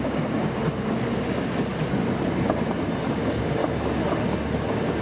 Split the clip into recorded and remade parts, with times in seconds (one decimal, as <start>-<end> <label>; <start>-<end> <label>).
0.0-0.6 remade; 0.6-3.1 recorded; 3.1-3.6 remade; 3.6-5.0 recorded